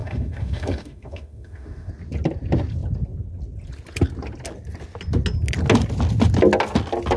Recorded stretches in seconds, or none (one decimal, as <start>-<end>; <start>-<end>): 1.9-7.2